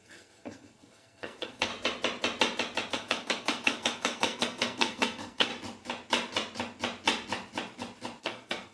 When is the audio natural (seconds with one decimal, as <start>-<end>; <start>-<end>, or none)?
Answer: 1.7-2.9; 5.5-8.2